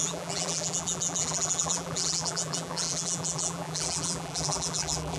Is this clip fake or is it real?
fake